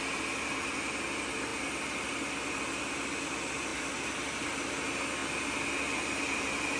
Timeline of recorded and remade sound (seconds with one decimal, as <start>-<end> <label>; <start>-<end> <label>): 0.0-3.7 recorded; 3.7-4.7 remade; 4.7-6.8 recorded